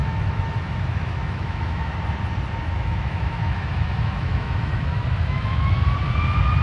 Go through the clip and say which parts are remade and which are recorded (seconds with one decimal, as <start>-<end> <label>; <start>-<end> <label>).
0.0-1.9 remade; 1.9-2.6 recorded; 2.6-5.8 remade; 5.8-6.6 recorded